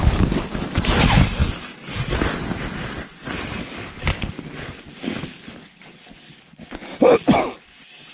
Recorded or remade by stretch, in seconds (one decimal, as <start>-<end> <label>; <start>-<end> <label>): 0.0-8.1 recorded